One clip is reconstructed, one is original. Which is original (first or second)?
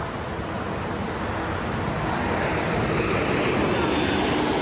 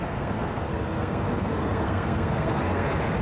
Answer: first